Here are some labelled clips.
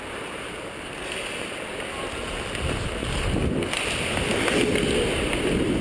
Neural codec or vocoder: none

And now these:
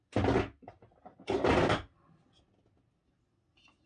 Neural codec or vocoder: none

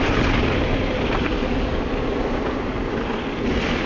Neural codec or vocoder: none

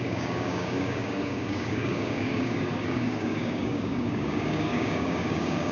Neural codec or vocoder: codec, DAC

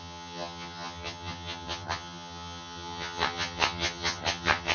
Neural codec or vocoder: vocoder, HiFi-GAN